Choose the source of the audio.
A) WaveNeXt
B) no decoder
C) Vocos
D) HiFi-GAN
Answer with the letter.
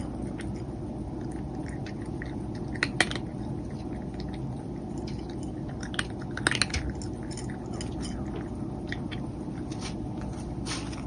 B